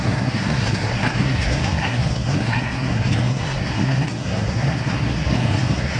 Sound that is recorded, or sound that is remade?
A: remade